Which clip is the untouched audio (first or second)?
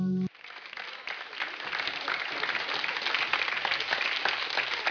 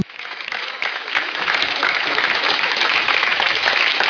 first